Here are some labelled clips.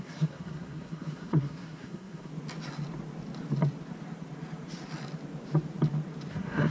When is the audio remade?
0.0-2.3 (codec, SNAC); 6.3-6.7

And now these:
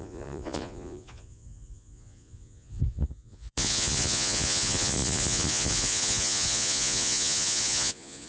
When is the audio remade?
0.0-8.3 (vocoder, Vocos)